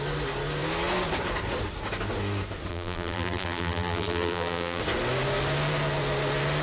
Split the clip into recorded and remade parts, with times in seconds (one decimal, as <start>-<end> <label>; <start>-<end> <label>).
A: 0.0-2.7 recorded; 2.7-4.8 remade; 4.8-6.6 recorded